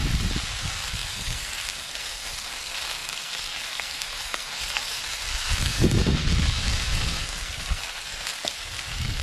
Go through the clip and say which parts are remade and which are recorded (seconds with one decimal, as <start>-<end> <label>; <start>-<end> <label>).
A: 0.0-0.6 recorded; 0.6-9.2 remade